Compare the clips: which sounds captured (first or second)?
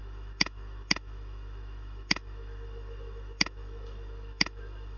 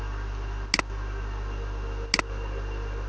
second